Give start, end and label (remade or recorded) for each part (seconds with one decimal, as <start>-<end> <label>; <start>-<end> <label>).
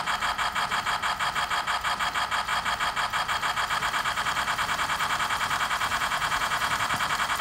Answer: 0.0-5.9 recorded; 5.9-6.7 remade; 6.7-7.4 recorded